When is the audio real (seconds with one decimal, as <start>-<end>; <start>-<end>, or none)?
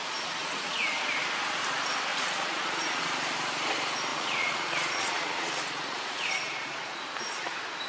0.0-0.4; 0.9-2.1; 3.0-4.1; 6.9-7.9